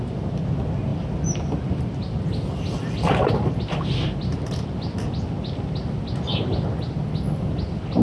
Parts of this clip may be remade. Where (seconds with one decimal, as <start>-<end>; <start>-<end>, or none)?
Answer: none